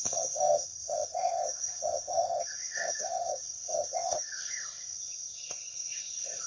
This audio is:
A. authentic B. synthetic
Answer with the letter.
B